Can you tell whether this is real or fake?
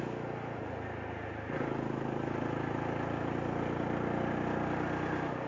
real